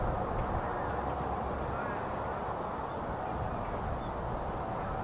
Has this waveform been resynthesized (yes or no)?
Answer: no